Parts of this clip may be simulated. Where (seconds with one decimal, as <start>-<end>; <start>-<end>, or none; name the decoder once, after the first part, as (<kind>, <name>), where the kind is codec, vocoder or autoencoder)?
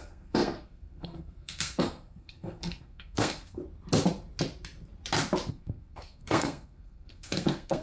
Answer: 0.0-3.6 (codec, SNAC); 5.5-7.8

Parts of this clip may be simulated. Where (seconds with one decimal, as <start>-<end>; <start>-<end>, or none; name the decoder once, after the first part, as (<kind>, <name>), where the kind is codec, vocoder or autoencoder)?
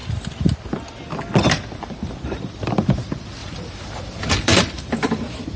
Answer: 1.4-5.6 (vocoder, BigVGAN v2)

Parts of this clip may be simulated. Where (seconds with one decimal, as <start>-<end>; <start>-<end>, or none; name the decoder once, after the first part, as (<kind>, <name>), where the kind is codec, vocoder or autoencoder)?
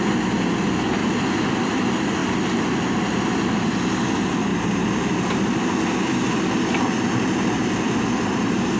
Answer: none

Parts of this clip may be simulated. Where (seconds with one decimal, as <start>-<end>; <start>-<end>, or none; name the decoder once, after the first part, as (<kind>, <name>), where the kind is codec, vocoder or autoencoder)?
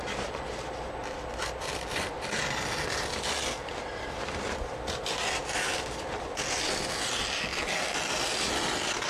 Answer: 1.0-2.3 (vocoder, BigVGAN v2); 3.6-7.0; 7.5-8.5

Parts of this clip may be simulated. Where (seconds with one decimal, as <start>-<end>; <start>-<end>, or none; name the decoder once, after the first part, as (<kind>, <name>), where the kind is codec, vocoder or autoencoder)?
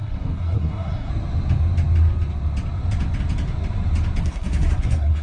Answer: 0.0-1.1 (codec, SNAC); 4.2-5.2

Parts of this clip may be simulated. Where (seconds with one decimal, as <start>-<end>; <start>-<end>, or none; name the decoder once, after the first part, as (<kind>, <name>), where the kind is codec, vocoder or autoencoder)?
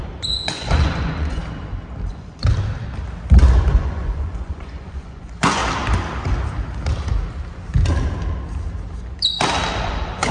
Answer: 0.0-1.4 (vocoder, Vocos); 2.1-2.5; 3.7-5.6; 9.7-10.3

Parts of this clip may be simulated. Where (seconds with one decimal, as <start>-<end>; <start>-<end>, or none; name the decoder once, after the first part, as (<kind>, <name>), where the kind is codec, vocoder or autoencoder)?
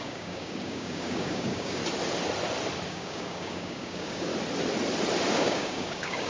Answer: 0.0-1.8 (codec, DAC); 2.9-4.3; 5.3-6.3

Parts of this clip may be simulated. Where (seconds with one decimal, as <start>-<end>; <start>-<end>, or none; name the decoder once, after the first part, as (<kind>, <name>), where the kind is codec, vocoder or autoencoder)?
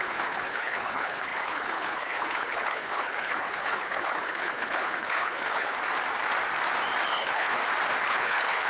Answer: 0.0-5.8 (codec, HILCodec); 7.1-7.6; 8.1-8.7